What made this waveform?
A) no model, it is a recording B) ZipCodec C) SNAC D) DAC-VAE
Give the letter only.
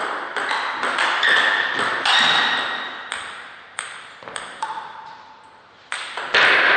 A